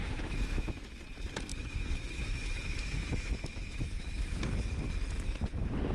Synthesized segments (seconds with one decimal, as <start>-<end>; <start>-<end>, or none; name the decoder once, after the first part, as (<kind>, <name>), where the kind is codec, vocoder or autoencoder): 0.0-0.9 (autoencoder, DAC-VAE); 1.5-4.4